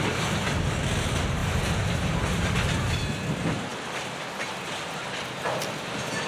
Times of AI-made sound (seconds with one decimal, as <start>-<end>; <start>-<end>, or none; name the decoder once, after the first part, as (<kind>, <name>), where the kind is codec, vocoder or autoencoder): none